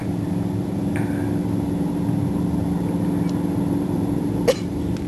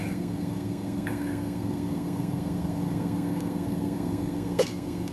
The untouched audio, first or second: first